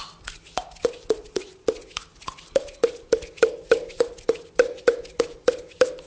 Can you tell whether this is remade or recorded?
recorded